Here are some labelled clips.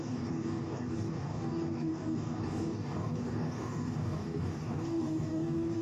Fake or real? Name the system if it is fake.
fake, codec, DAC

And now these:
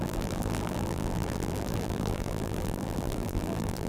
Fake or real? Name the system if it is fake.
fake, vocoder, BigVGAN v2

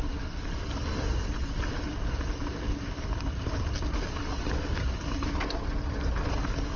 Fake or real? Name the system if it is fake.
real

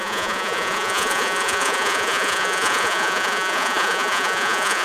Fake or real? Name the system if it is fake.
fake, vocoder, Vocos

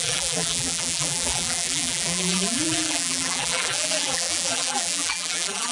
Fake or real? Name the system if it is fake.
fake, vocoder, BigVGAN v2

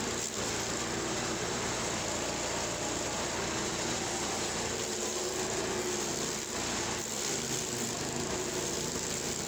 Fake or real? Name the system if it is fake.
real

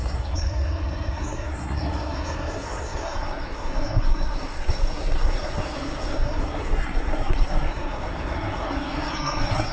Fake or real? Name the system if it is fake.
fake, codec, SNAC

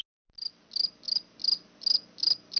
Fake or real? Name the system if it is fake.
real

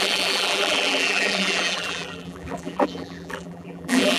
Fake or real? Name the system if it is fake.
fake, vocoder, BigVGAN v2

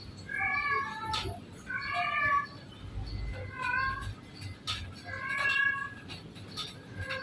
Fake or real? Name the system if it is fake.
real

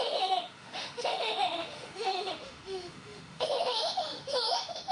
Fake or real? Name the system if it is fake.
fake, autoencoder, DAC-VAE